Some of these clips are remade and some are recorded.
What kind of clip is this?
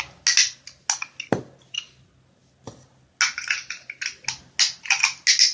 recorded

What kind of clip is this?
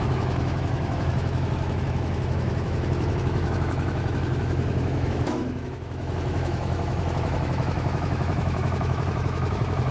remade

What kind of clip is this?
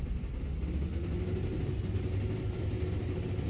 recorded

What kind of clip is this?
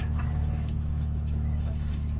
remade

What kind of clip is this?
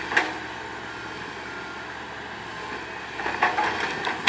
recorded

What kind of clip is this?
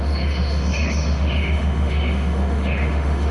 remade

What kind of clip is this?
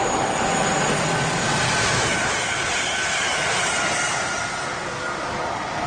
recorded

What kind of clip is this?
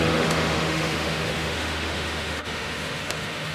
remade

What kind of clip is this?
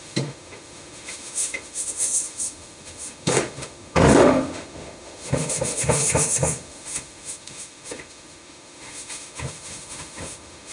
remade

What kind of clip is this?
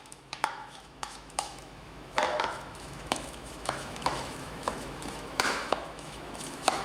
remade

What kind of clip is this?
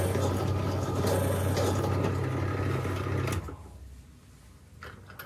recorded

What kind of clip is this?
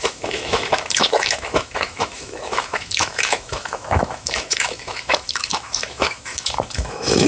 remade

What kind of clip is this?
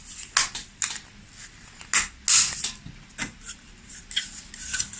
recorded